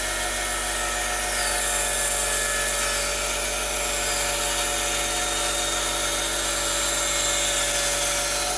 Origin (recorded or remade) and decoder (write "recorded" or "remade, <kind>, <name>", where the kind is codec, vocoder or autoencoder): recorded